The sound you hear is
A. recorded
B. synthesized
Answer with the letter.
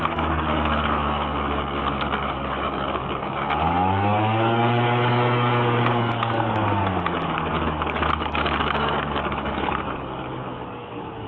B